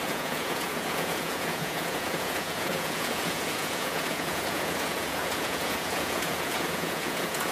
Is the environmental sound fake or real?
fake